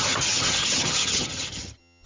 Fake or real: fake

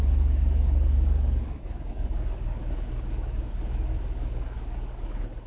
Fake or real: fake